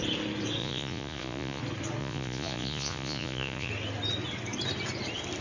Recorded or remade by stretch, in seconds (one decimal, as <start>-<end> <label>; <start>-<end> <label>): 0.0-0.6 recorded; 0.6-1.6 remade; 1.6-2.0 recorded; 2.0-3.7 remade; 3.7-5.4 recorded